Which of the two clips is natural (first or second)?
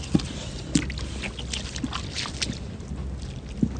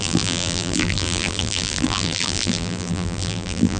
first